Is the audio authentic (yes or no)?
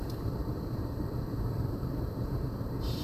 no